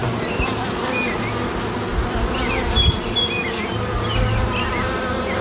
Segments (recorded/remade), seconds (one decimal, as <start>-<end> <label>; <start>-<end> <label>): 0.0-5.4 recorded